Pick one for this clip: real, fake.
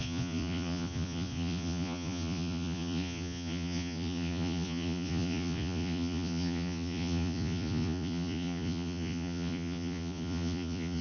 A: fake